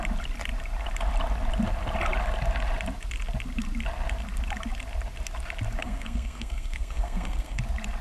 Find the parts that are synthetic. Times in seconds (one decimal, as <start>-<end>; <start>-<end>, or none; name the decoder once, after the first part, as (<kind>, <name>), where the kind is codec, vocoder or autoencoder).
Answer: 5.8-7.6 (codec, SNAC)